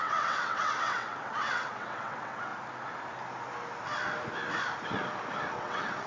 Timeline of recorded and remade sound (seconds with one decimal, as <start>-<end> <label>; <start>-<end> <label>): 0.0-2.5 remade; 2.5-5.5 recorded; 5.5-6.1 remade